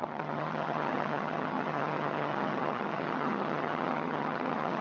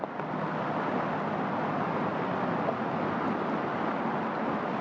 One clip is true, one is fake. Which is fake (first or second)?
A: first